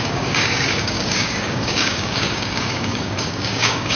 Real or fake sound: fake